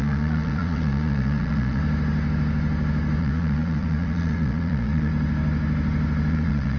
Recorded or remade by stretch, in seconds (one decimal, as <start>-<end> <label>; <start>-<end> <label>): 0.0-1.8 remade; 1.8-3.2 recorded; 3.2-5.1 remade; 5.1-6.3 recorded; 6.3-6.8 remade